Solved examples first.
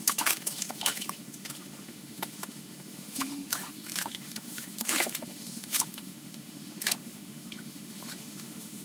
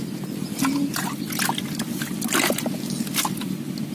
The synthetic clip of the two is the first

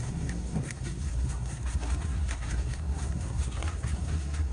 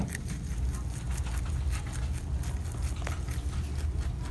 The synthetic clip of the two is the first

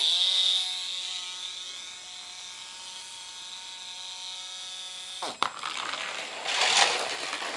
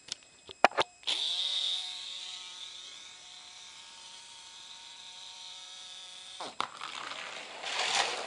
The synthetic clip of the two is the second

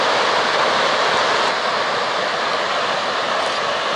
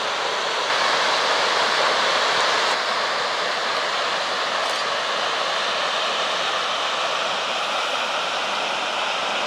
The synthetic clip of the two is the first